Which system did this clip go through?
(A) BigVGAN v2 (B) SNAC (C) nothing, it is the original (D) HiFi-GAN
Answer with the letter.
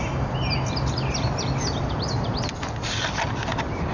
C